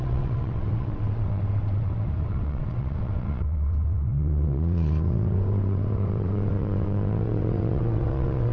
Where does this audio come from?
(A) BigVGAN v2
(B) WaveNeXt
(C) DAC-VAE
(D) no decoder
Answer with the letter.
B